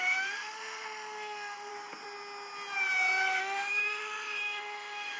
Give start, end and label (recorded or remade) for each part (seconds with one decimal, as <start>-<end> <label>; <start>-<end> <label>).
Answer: 0.0-1.7 remade; 1.7-3.4 recorded; 3.4-5.2 remade